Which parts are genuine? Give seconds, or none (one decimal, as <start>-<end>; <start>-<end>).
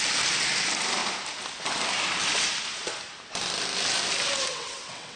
0.0-4.5